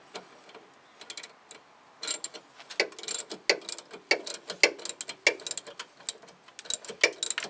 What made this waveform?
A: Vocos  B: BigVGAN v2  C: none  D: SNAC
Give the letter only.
C